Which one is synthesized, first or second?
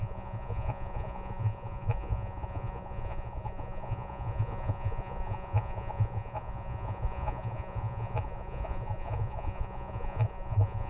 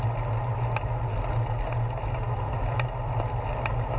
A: first